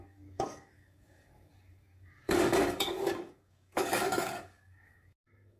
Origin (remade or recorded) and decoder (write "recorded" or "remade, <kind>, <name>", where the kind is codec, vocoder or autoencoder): remade, codec, DAC